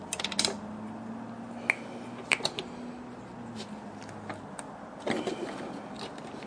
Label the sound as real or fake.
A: real